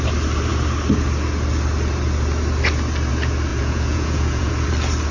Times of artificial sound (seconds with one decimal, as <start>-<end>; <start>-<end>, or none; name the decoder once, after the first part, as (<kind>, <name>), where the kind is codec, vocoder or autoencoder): 3.5-4.5 (vocoder, Vocos)